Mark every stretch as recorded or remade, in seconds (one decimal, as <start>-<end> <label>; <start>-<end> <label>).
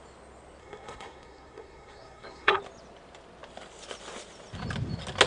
0.0-0.6 recorded; 0.6-2.6 remade; 2.6-5.3 recorded